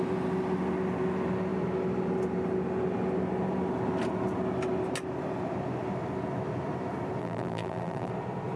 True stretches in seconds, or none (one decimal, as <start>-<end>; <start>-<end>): 0.0-7.2; 8.1-8.6